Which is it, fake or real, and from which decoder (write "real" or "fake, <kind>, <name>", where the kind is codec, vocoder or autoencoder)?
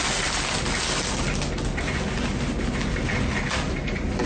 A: real